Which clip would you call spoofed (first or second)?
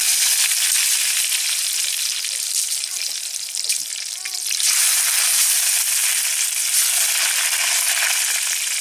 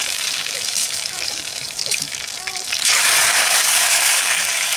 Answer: second